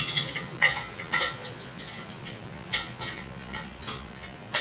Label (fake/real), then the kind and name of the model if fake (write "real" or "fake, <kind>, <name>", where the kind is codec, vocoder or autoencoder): fake, vocoder, Vocos